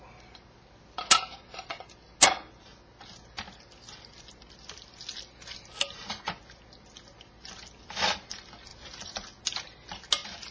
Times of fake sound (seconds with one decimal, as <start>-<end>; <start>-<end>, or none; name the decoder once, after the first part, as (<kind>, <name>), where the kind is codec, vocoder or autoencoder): none